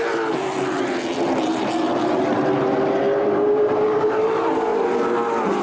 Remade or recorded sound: recorded